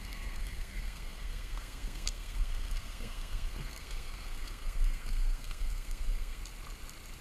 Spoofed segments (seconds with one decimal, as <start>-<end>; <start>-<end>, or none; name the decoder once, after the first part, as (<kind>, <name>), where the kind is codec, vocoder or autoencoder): 0.0-6.4 (codec, SNAC)